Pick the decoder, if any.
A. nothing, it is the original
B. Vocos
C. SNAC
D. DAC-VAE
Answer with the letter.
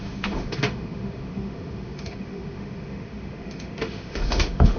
D